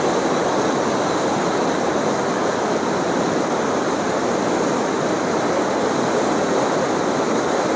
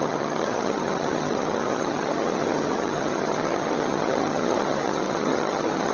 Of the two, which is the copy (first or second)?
second